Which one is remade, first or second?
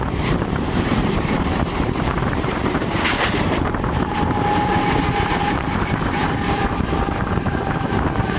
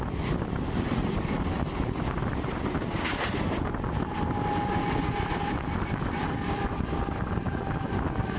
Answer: first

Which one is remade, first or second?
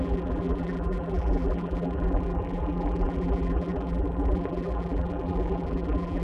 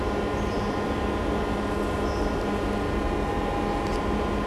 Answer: first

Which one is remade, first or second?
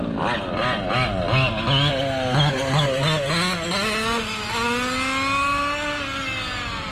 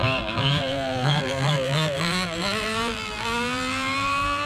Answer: second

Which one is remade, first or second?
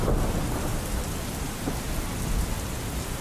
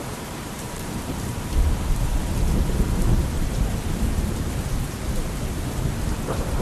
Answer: second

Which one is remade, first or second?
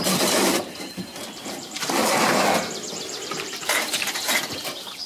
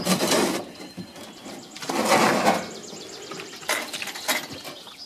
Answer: first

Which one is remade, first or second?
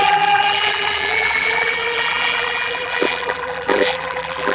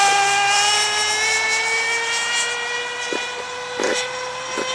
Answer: first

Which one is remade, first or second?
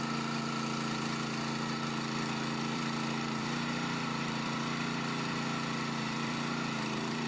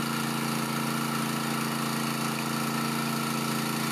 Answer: first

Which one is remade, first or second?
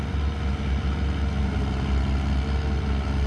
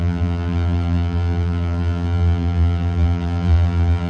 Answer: second